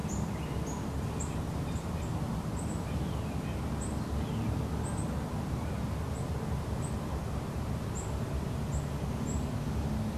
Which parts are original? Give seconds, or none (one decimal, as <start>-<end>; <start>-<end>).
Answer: 3.7-10.2